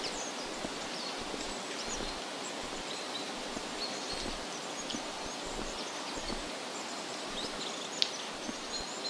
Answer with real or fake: real